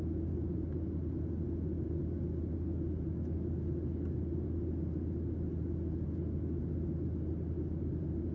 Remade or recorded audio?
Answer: recorded